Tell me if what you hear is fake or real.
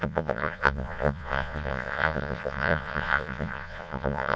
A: fake